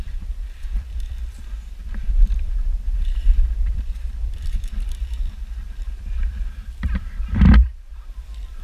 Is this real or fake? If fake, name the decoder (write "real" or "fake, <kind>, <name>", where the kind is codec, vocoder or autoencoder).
fake, vocoder, BigVGAN v2